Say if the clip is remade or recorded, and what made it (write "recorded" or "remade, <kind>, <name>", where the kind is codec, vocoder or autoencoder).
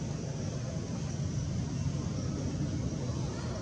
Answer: recorded